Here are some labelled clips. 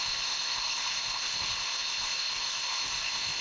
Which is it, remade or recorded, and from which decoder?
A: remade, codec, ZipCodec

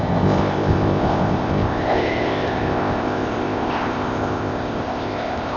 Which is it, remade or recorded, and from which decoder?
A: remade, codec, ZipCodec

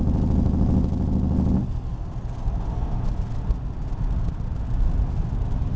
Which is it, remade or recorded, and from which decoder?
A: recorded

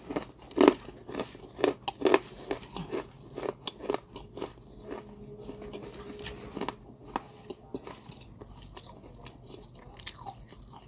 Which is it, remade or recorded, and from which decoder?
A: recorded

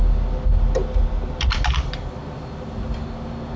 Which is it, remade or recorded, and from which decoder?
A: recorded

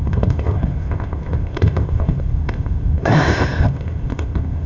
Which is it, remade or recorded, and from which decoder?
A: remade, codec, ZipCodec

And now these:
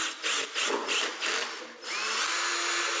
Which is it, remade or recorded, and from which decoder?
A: recorded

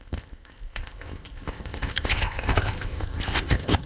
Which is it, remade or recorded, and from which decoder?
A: remade, codec, ZipCodec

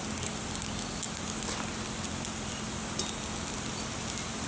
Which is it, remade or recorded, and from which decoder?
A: recorded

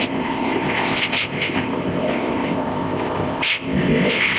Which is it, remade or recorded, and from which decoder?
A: remade, codec, ZipCodec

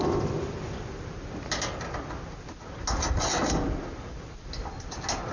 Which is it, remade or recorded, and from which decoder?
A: recorded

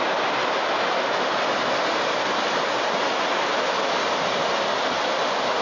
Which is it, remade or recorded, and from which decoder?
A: recorded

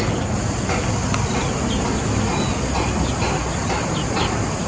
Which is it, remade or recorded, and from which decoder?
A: recorded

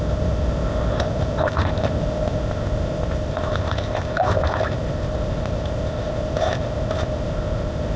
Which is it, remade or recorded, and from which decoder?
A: remade, codec, ZipCodec